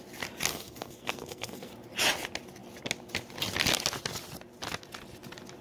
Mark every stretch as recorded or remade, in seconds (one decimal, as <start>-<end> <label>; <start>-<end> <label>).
0.0-0.5 recorded; 0.5-1.7 remade; 1.7-5.6 recorded